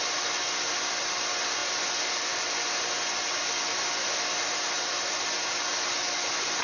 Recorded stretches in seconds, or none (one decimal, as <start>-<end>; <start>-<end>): 0.0-6.6